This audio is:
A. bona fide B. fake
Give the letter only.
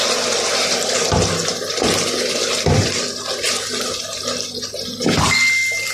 A